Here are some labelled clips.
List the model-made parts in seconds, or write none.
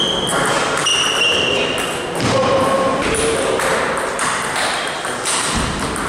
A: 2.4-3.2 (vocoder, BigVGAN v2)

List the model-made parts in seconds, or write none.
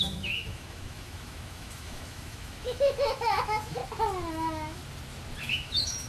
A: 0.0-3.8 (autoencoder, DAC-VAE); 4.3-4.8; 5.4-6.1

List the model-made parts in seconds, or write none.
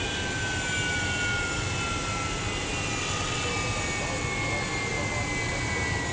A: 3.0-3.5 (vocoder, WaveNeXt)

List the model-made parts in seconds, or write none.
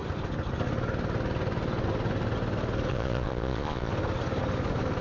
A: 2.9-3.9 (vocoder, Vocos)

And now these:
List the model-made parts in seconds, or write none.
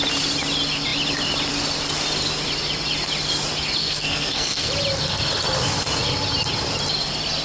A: 3.8-4.7 (codec, SNAC)